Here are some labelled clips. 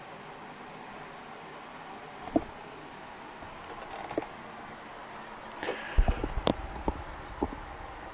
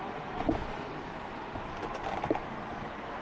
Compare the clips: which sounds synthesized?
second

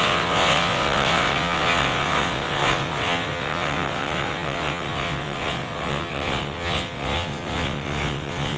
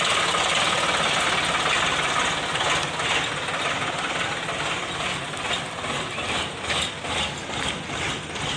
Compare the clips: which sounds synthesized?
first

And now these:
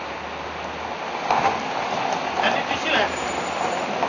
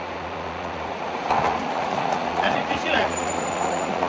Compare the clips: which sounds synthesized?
second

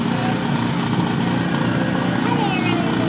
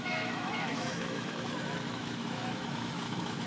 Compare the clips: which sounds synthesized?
second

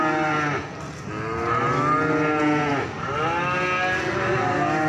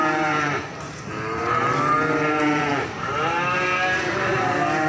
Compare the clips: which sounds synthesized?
second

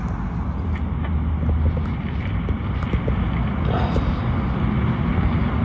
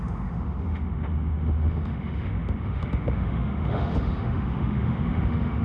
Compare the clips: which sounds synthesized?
second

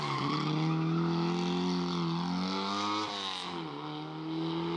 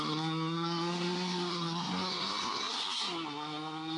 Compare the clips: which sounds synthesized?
second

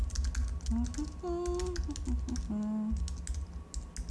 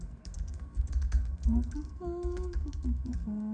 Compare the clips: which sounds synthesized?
second